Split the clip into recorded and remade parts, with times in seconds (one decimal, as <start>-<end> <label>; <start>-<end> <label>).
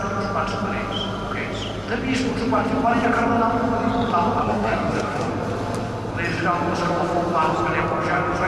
0.0-4.4 recorded; 4.4-5.3 remade; 5.3-8.5 recorded